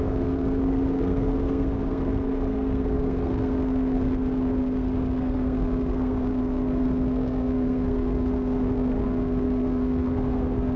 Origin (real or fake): fake